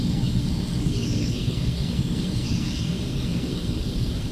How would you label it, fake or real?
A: fake